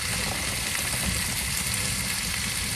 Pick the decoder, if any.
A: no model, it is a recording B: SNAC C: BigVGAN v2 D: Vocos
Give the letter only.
A